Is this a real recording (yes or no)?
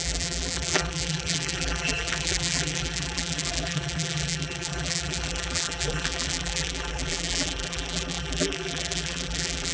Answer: no